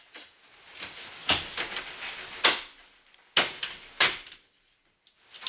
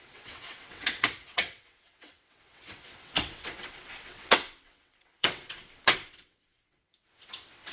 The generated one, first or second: second